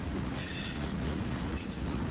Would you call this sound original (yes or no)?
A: no